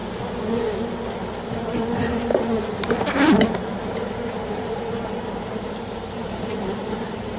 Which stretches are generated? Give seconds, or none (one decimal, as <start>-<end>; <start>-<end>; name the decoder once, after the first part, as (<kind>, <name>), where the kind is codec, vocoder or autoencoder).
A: 1.5-7.4 (vocoder, BigVGAN v2)